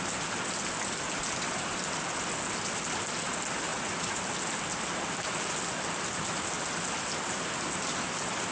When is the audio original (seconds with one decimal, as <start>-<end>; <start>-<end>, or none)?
0.0-3.7; 4.2-8.5